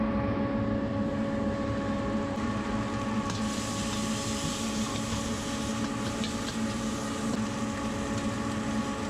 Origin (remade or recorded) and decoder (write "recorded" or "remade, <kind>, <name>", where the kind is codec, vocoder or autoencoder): recorded